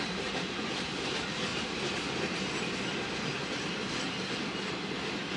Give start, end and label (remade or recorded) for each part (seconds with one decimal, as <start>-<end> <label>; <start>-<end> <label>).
0.0-5.4 recorded